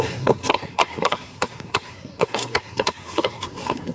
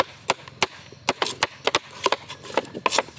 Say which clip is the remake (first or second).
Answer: first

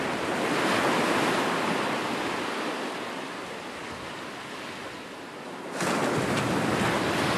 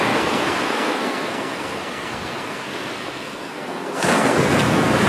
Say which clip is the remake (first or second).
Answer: second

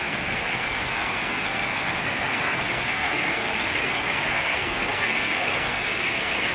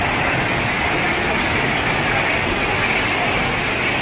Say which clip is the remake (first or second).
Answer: first